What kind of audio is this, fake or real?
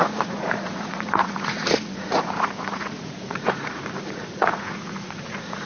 fake